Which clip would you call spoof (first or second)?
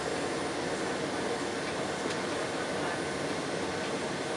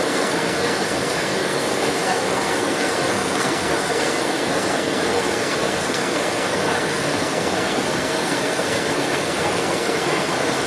second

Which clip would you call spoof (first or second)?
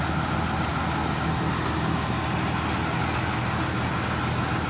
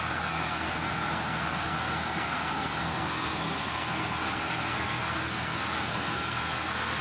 second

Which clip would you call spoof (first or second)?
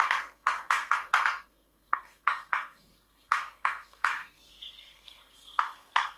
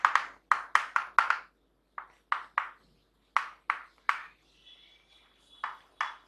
first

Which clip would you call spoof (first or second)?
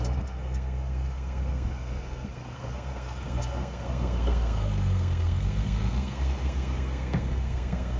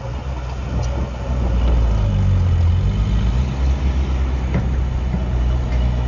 first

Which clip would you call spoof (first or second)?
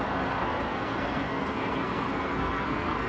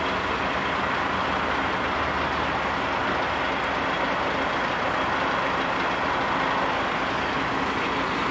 first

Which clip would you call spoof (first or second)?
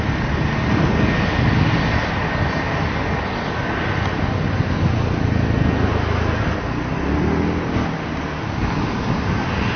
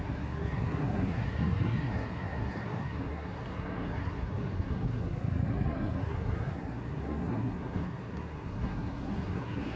second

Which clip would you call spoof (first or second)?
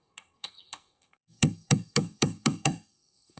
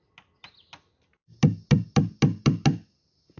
first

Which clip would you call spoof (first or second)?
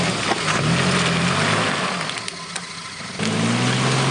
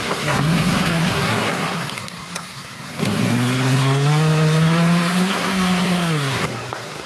second